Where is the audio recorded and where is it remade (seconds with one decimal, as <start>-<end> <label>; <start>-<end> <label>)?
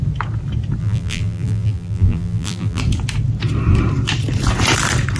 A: 0.0-0.8 recorded; 0.8-2.8 remade; 2.8-5.2 recorded